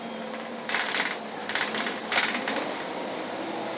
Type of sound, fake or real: fake